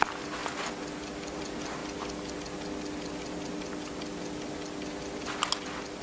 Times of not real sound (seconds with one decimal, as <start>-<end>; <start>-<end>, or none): none